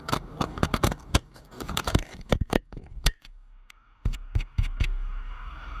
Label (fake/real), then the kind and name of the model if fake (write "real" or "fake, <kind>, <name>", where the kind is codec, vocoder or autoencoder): fake, codec, DAC